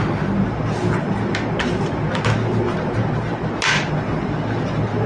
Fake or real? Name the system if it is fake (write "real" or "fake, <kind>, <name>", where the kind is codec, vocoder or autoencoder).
real